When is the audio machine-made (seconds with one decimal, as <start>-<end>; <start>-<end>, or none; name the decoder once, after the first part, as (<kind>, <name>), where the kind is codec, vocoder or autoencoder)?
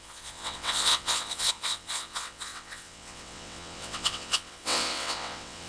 0.0-5.7 (vocoder, WaveNeXt)